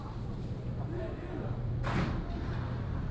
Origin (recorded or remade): remade